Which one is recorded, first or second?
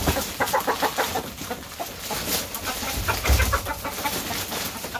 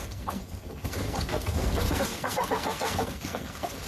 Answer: first